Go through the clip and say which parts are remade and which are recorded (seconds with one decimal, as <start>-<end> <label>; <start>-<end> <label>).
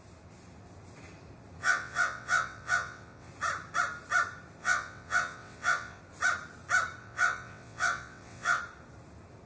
0.0-1.6 recorded; 1.6-3.3 remade; 3.3-4.6 recorded; 4.6-6.0 remade; 6.0-7.0 recorded; 7.0-8.6 remade; 8.6-9.5 recorded